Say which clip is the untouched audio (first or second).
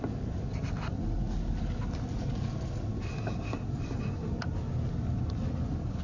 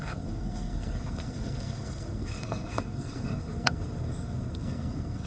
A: first